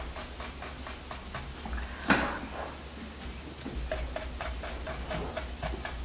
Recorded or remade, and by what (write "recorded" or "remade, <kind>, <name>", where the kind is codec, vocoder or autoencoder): recorded